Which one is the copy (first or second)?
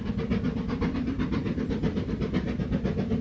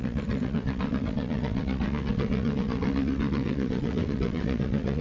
second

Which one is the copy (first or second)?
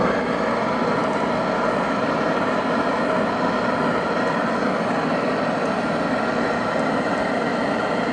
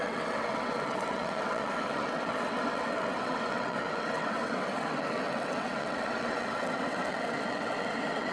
second